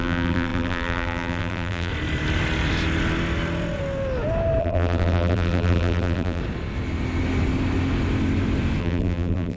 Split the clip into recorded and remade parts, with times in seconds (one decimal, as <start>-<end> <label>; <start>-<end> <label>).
0.0-1.9 remade; 1.9-4.6 recorded; 4.6-6.4 remade; 6.4-8.8 recorded; 8.8-9.6 remade

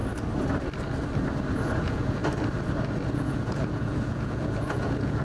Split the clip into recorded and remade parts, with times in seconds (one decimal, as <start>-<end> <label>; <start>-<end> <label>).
0.0-1.8 recorded; 1.8-2.2 remade; 2.2-3.1 recorded; 3.1-5.2 remade

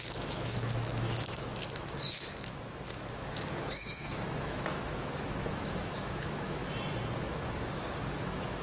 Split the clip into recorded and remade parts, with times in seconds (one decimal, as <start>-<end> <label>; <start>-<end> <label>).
0.0-6.6 remade; 6.6-7.1 recorded; 7.1-8.6 remade